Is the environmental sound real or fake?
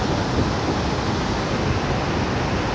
real